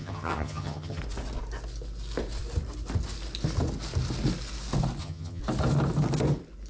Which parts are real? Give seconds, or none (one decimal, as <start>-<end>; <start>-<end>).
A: 1.0-5.0; 5.4-6.7